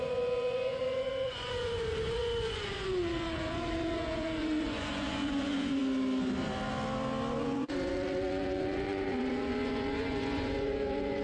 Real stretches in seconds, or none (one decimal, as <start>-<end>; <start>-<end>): 5.8-7.3

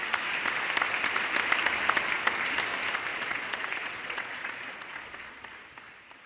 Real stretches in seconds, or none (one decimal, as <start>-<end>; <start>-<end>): 0.0-3.1; 5.3-6.3

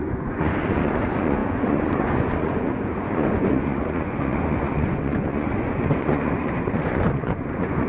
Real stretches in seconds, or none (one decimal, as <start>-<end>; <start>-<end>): none

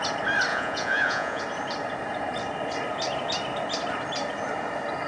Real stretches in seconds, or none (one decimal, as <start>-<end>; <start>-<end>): 0.0-0.5; 1.4-5.1